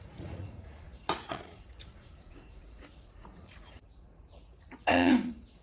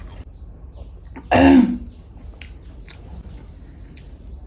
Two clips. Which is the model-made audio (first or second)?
first